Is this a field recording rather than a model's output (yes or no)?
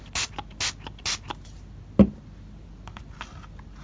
yes